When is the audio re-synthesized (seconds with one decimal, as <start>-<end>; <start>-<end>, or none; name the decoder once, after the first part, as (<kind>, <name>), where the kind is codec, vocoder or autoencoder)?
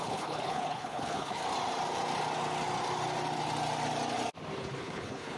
0.0-1.4 (codec, HILCodec); 4.6-5.4